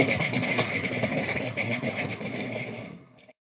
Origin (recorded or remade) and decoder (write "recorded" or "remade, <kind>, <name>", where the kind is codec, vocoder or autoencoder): remade, codec, SNAC